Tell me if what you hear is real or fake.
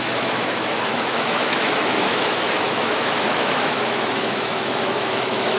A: fake